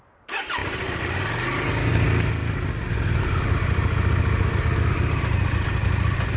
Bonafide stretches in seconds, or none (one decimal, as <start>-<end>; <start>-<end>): 0.0-6.4